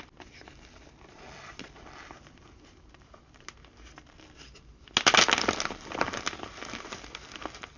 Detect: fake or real real